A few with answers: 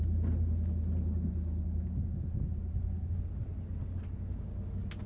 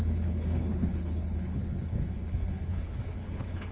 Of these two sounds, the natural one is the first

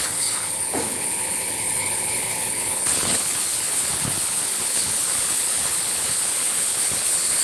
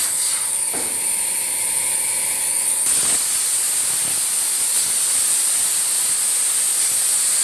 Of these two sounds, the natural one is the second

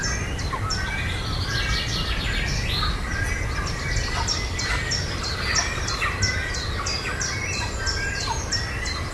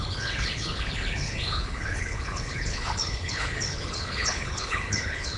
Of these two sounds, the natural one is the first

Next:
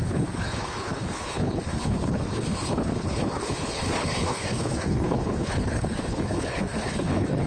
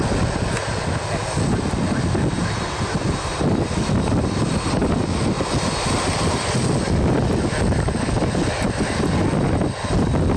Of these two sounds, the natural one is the second